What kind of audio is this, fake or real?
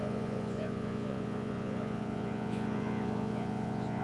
fake